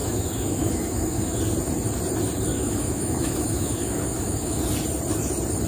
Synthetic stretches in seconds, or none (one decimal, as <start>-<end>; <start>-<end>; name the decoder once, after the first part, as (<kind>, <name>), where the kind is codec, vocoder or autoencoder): 0.0-1.4 (autoencoder, DAC-VAE); 2.5-4.6